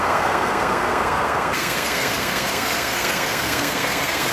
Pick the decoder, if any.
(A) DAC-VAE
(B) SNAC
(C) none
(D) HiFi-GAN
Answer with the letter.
B